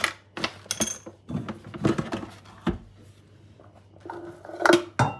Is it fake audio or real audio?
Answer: real